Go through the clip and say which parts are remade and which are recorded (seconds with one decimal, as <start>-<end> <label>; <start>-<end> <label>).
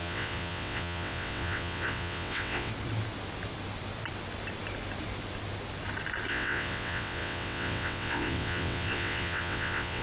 0.0-2.7 remade; 2.7-6.3 recorded; 6.3-10.0 remade